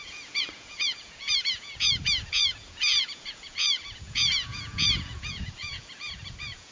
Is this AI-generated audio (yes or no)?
yes